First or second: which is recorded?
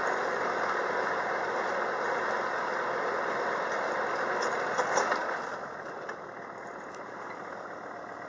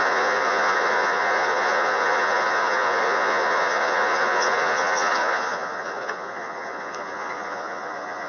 first